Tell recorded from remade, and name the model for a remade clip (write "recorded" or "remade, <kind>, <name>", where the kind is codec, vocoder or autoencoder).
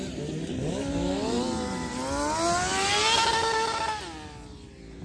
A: recorded